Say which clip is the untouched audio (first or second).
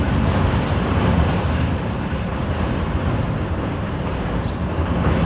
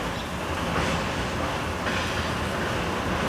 second